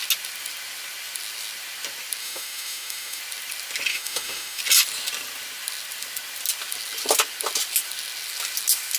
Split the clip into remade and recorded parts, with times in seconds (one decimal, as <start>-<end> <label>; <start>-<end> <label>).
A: 0.0-2.2 recorded; 2.2-3.2 remade; 3.2-3.9 recorded; 3.9-4.6 remade; 4.6-9.0 recorded